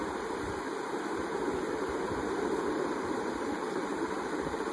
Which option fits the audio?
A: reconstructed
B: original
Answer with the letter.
A